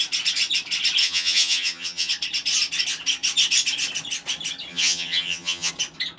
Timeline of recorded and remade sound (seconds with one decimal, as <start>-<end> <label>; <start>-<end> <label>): 0.0-1.0 recorded; 1.0-2.1 remade; 2.1-4.7 recorded; 4.7-5.7 remade; 5.7-6.2 recorded